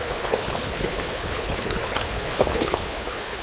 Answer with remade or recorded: remade